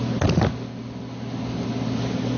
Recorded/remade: recorded